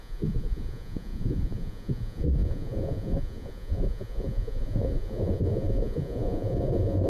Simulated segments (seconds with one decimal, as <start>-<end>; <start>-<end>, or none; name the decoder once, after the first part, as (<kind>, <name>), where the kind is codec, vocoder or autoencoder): 0.0-7.1 (vocoder, Vocos)